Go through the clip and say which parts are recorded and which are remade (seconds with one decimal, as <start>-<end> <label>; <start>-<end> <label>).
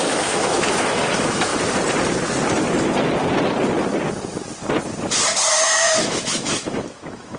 0.0-1.5 remade; 1.5-5.5 recorded; 5.5-7.4 remade